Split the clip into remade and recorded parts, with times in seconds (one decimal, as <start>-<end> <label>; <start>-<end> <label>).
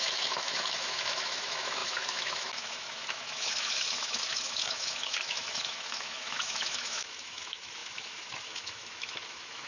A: 0.0-9.7 remade